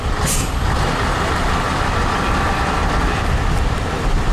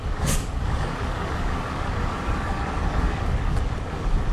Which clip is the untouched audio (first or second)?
first